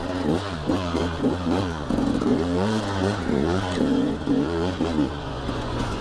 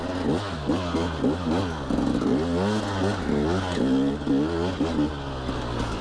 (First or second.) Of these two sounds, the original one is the second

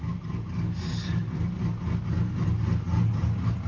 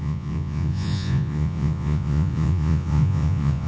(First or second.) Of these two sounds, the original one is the first